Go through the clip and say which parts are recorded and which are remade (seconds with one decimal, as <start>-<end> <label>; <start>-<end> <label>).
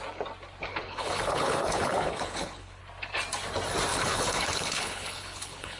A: 0.0-0.7 recorded; 0.7-2.8 remade; 2.8-3.9 recorded; 3.9-5.8 remade